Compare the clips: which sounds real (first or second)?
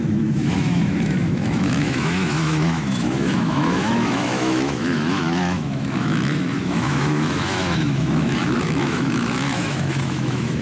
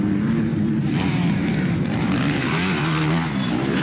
second